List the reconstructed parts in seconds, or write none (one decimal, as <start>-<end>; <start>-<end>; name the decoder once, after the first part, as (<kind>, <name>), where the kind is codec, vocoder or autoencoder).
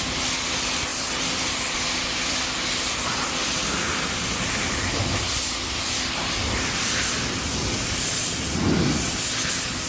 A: 0.9-1.4 (vocoder, BigVGAN v2)